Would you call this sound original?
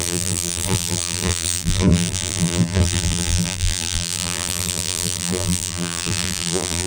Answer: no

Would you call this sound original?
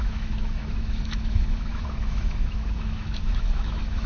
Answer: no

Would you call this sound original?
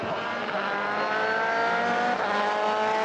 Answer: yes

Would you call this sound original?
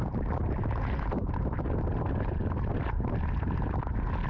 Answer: yes